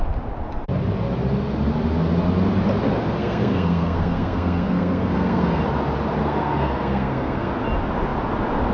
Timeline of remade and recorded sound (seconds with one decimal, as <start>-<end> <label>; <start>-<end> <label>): 0.0-3.2 recorded; 3.2-5.6 remade; 5.6-6.2 recorded; 6.2-7.5 remade; 7.5-8.7 recorded